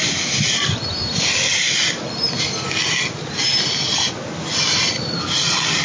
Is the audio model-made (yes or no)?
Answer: no